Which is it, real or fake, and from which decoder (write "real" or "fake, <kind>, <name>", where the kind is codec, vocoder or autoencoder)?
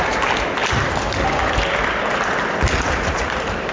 real